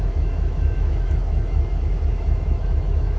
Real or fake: fake